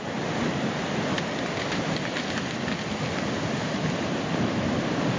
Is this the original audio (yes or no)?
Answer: yes